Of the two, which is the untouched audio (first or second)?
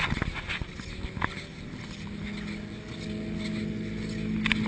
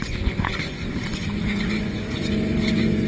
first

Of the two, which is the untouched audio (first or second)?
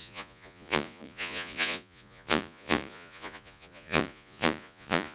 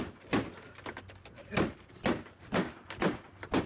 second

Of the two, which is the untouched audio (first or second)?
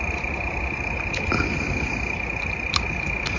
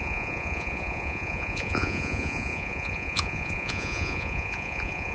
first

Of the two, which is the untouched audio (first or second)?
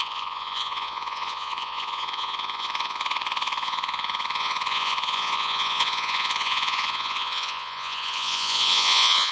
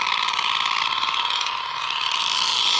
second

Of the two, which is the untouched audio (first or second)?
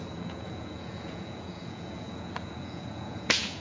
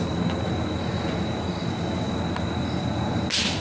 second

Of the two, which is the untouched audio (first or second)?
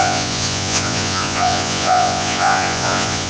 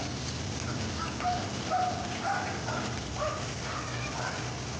second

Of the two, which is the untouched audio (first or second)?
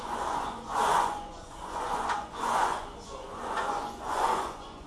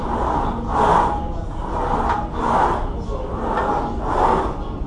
second